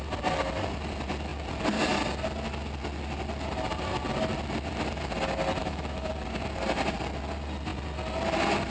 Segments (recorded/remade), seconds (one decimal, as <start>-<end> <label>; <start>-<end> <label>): 0.0-5.6 recorded; 5.6-6.1 remade; 6.1-8.7 recorded